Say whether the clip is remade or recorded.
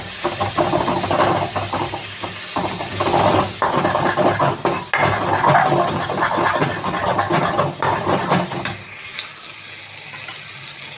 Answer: recorded